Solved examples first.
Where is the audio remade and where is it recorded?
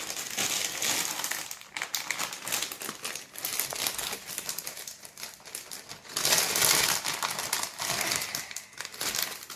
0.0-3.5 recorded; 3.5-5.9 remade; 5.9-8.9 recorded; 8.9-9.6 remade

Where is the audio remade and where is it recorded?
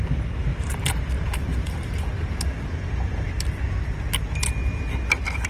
0.0-0.5 recorded; 0.5-2.7 remade; 2.7-5.5 recorded